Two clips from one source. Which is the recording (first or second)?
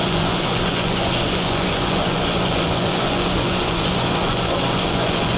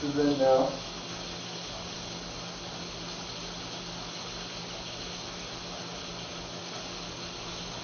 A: second